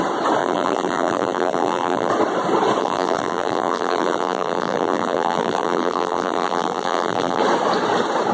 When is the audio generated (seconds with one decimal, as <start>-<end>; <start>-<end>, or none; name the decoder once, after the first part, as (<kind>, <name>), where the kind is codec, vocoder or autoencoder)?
0.4-2.1 (vocoder, BigVGAN v2); 2.8-7.4